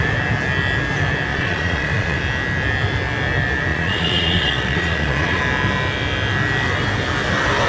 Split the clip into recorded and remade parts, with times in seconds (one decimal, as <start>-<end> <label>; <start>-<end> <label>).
0.0-1.3 recorded; 1.3-2.2 remade; 2.2-3.7 recorded; 3.7-5.4 remade; 5.4-7.7 recorded